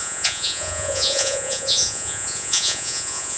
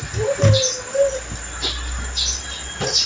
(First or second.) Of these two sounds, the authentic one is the second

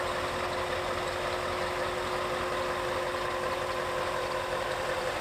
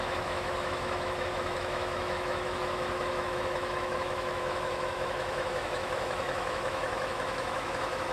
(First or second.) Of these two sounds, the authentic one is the first